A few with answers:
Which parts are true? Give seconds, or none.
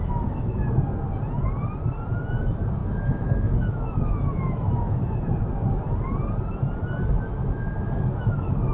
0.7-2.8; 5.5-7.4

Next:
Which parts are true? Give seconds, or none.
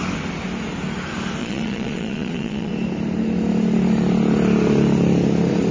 0.0-1.4; 2.7-5.7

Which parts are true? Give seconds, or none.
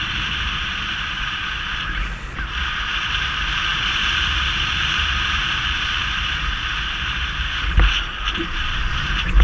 none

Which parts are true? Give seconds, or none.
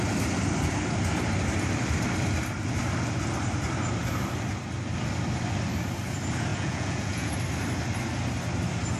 0.0-6.5; 7.3-9.0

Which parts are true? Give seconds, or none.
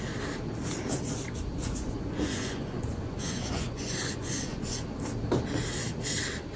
0.0-1.5; 4.8-6.6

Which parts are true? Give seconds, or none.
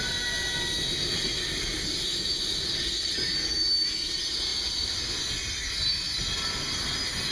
0.0-7.3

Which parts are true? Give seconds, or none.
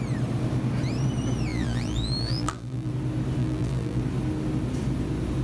0.0-1.5; 2.9-3.4; 4.0-5.4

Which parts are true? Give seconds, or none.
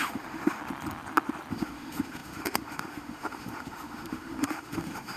0.6-1.5